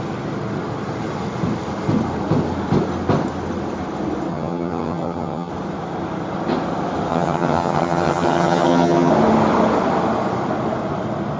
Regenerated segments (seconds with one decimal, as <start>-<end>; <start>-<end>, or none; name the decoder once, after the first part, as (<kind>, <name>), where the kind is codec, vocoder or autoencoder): 4.3-5.5 (vocoder, HiFi-GAN); 7.1-9.1